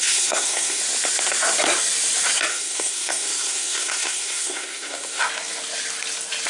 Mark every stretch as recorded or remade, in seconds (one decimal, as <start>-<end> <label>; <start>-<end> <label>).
0.0-0.8 remade; 0.8-2.5 recorded; 2.5-5.2 remade; 5.2-6.5 recorded